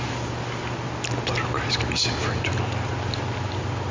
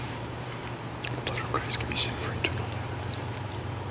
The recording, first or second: first